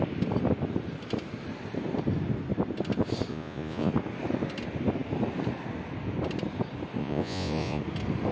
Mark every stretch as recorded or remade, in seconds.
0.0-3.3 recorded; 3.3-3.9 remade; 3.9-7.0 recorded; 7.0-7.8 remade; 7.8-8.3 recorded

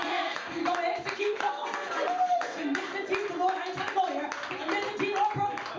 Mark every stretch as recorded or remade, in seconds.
0.0-0.6 remade; 0.6-1.2 recorded; 1.2-2.9 remade; 2.9-5.8 recorded